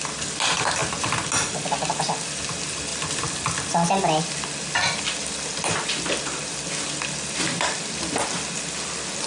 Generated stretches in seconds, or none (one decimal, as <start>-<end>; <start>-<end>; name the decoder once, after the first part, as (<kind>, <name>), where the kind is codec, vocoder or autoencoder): none